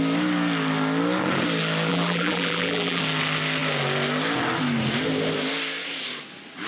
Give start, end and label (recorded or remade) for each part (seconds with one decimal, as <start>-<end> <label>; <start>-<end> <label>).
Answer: 0.0-1.9 recorded; 1.9-3.0 remade; 3.0-6.7 recorded